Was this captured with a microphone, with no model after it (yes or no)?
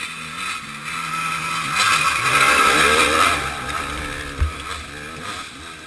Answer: yes